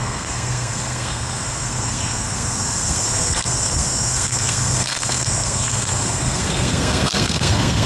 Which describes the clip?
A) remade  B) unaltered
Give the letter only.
A